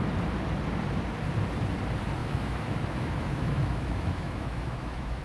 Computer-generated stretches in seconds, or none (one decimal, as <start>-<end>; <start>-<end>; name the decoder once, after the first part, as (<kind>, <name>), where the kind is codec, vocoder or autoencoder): 2.2-5.2 (autoencoder, DAC-VAE)